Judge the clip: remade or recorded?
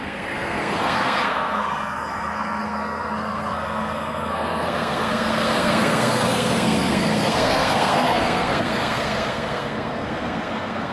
remade